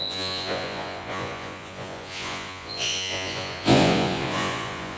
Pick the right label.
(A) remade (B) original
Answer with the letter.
A